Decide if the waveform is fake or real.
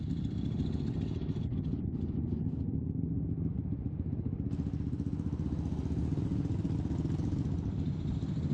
real